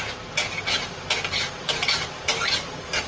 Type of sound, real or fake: real